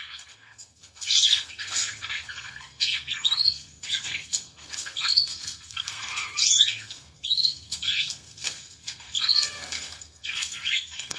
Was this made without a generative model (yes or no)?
no